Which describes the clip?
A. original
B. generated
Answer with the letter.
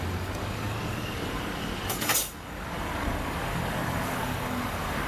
B